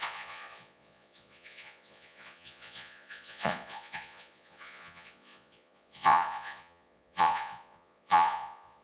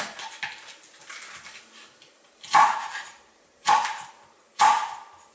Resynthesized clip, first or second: first